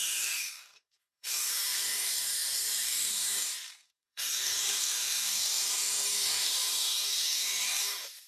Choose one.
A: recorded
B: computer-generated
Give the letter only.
B